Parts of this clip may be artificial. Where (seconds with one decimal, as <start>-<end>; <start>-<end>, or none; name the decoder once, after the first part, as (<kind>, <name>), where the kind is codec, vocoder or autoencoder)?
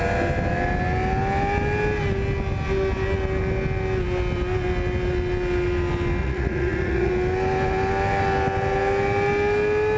6.2-7.1 (vocoder, Vocos)